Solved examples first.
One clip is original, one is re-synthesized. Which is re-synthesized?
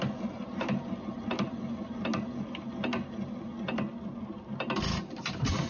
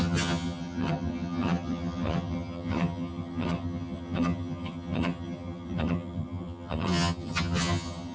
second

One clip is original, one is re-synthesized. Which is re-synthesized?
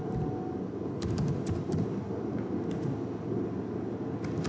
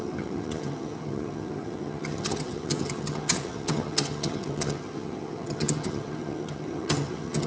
second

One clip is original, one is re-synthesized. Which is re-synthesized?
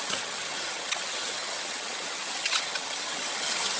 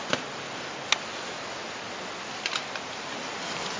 first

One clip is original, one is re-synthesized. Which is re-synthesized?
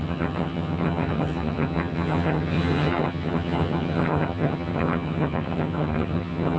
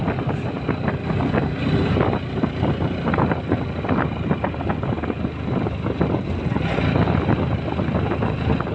first